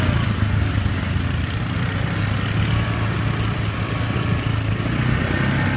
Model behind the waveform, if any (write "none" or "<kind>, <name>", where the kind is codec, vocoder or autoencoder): none